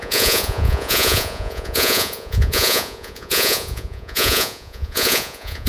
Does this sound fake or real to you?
fake